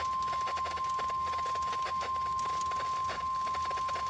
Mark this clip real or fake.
real